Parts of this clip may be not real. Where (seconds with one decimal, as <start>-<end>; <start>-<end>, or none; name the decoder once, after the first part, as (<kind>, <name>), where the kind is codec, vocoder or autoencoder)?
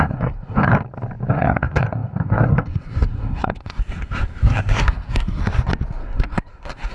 0.0-0.7 (codec, SNAC); 1.3-5.4; 6.0-6.9